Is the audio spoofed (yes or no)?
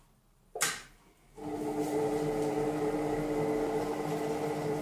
no